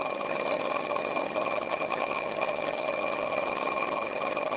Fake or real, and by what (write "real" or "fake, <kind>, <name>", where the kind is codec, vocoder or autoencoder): fake, vocoder, HiFi-GAN